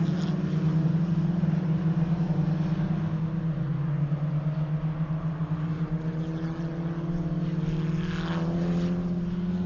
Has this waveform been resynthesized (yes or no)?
no